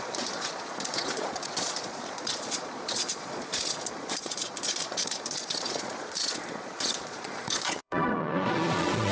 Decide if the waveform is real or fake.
fake